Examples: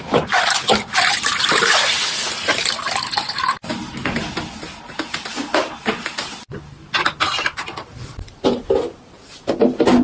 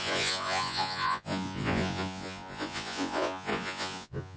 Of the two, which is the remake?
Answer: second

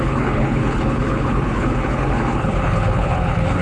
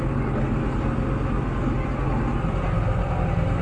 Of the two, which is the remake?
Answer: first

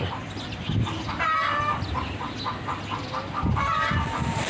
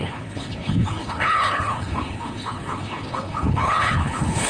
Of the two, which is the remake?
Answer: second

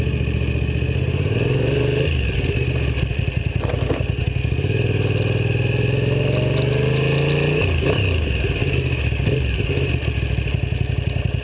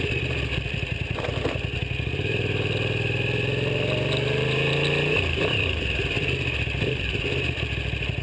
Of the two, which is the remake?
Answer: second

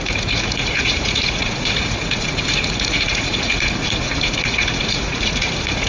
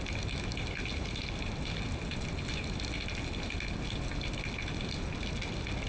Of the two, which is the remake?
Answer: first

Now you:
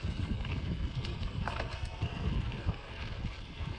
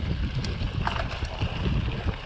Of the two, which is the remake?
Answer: first